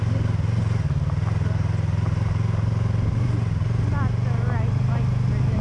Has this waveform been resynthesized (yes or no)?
no